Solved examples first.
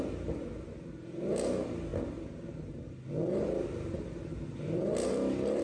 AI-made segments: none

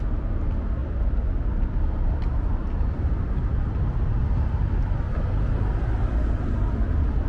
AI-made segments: none

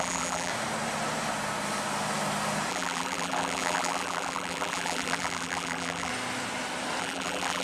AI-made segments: 0.0-0.5 (vocoder, BigVGAN v2); 2.7-6.1; 7.0-7.6

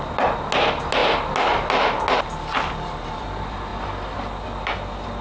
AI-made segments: none

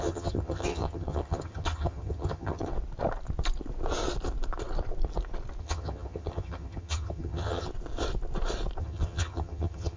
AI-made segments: 0.0-2.7 (vocoder, HiFi-GAN); 5.6-7.7; 8.8-10.0

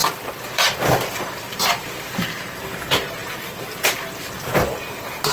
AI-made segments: 0.0-2.4 (vocoder, BigVGAN v2); 3.2-4.2

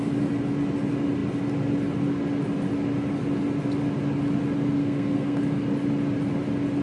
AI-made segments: 4.8-5.4 (codec, SNAC)

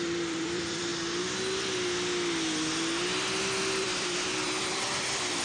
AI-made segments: 0.0-0.9 (vocoder, BigVGAN v2); 3.8-5.4